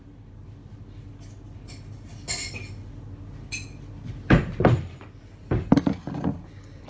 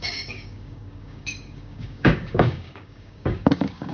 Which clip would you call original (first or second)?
first